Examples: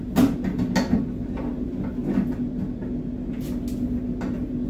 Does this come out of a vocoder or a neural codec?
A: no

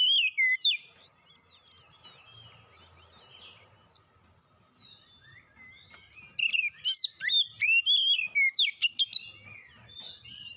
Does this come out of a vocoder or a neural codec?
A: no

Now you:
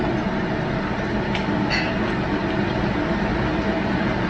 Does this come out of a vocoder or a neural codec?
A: no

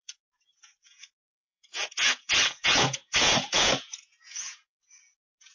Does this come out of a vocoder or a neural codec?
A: yes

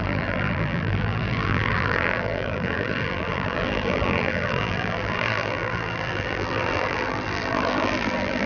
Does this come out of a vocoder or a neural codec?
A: yes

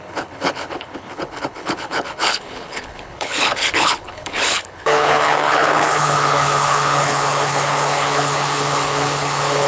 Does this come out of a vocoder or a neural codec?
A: yes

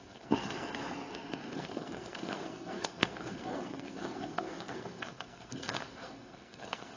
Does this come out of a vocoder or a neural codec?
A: yes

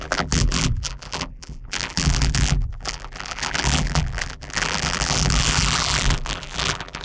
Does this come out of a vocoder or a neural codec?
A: yes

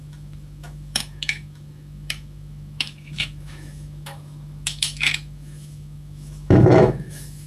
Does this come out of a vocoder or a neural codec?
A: yes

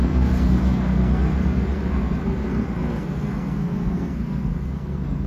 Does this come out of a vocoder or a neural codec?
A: yes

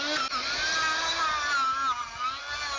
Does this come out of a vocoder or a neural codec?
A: no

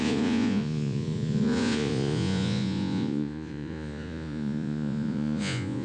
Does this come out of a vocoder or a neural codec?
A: yes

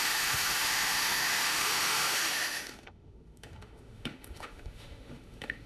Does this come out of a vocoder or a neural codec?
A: yes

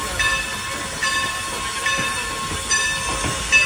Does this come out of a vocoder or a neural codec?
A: no